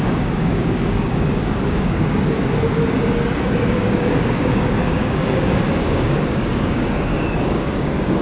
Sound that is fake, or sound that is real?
fake